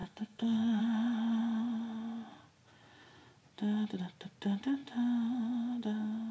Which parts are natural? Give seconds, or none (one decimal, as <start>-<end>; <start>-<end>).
0.8-6.3

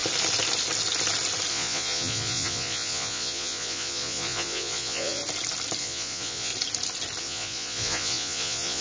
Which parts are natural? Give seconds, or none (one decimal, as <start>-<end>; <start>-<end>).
0.0-1.5; 5.2-5.8; 6.5-7.2

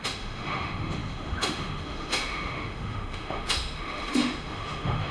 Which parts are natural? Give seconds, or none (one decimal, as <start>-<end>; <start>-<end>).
none